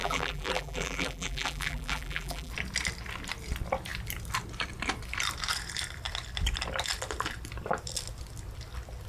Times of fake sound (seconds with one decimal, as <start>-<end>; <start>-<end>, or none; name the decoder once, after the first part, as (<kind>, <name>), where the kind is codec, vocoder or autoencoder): 0.0-2.5 (vocoder, BigVGAN v2)